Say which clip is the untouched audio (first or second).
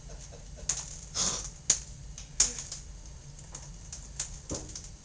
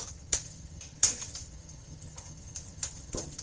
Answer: first